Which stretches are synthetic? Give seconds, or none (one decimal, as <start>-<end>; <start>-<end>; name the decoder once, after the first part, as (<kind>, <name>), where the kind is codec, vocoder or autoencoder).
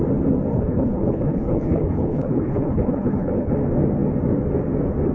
0.5-3.5 (codec, HILCodec)